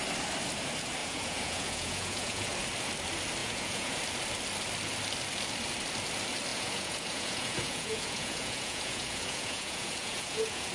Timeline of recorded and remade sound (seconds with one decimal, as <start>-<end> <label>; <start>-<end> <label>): 0.0-1.0 recorded; 1.0-2.5 remade; 2.5-3.4 recorded; 3.4-4.0 remade; 4.0-6.5 recorded; 6.5-10.7 remade